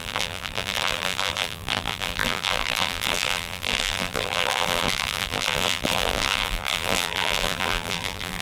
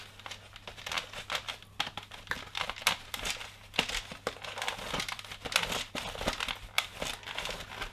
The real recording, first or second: second